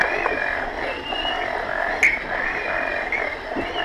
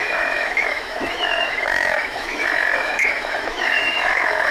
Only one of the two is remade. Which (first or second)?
second